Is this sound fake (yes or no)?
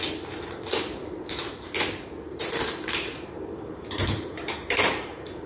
yes